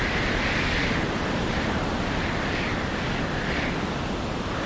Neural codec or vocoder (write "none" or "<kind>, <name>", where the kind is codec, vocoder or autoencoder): none